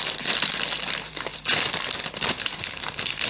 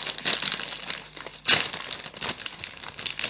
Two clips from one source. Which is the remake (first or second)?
first